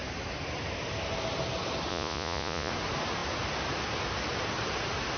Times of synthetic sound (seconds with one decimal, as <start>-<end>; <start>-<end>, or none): 1.9-2.7